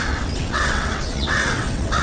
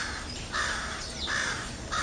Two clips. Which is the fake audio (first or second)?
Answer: first